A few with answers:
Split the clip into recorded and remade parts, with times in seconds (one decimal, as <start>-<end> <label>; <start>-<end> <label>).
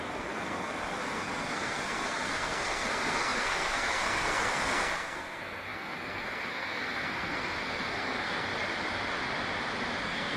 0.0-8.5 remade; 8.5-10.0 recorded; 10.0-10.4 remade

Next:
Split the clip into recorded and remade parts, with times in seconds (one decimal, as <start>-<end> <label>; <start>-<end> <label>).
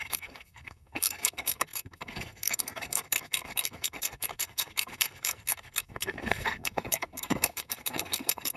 0.0-8.6 remade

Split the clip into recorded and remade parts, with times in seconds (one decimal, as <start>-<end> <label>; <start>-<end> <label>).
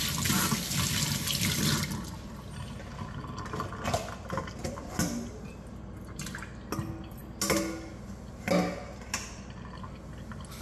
0.0-10.6 recorded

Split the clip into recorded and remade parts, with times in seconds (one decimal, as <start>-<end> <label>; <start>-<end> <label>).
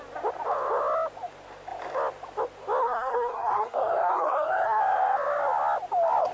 0.0-2.8 recorded; 2.8-4.8 remade; 4.8-6.3 recorded